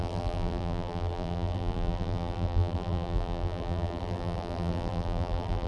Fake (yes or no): yes